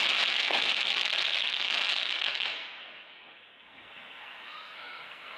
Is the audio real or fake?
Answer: fake